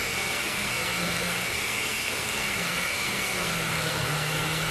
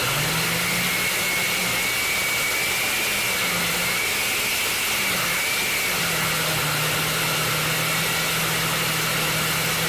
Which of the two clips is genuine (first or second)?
second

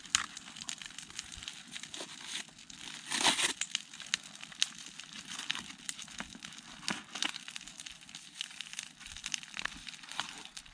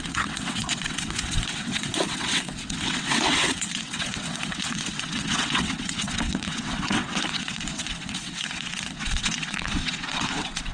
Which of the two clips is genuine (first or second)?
first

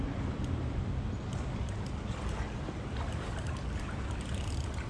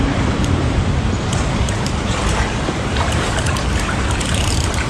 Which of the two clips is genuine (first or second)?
first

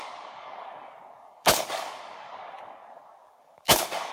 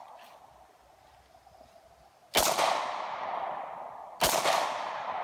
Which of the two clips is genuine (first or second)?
second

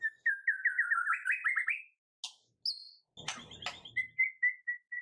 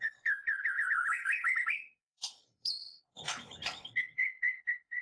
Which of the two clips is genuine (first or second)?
first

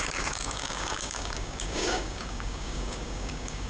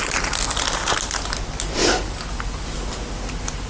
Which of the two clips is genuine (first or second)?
second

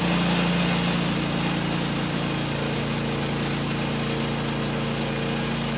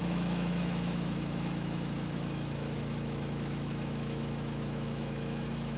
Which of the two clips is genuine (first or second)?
first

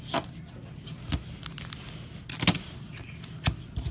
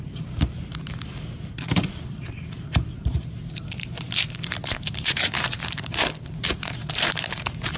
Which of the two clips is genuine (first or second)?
first